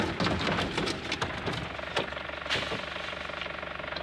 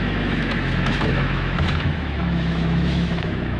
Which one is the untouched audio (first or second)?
first